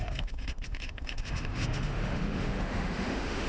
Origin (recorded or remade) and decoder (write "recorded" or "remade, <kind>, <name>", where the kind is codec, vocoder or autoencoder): remade, autoencoder, DAC-VAE